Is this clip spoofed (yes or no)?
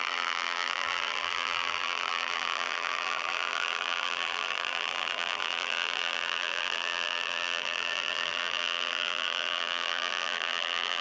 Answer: yes